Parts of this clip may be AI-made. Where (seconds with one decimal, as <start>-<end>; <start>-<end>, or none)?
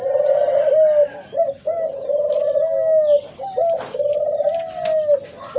none